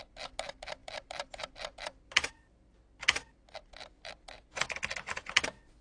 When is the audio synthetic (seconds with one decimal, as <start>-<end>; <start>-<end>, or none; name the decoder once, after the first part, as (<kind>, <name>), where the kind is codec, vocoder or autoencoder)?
0.8-1.5 (vocoder, BigVGAN v2); 3.9-4.4